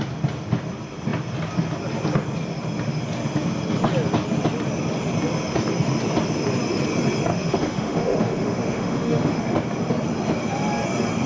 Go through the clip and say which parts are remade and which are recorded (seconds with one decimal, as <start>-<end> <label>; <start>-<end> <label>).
0.0-7.3 recorded; 7.3-9.4 remade; 9.4-11.3 recorded